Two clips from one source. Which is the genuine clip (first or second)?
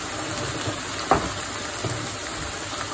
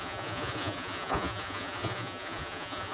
first